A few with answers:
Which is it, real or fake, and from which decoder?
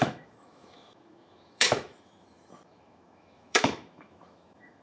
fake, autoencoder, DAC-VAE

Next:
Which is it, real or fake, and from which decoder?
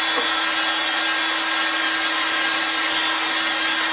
real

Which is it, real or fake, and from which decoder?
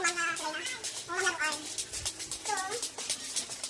real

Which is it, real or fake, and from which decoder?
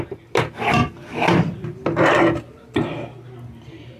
real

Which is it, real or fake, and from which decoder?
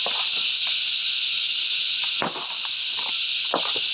real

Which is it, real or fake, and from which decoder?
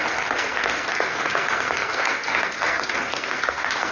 fake, codec, SNAC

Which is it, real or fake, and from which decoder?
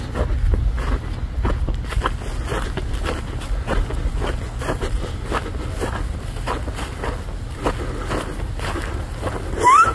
real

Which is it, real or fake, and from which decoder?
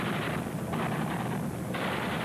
real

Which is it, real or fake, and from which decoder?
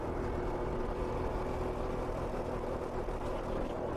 real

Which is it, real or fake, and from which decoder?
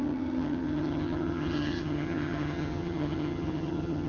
fake, vocoder, HiFi-GAN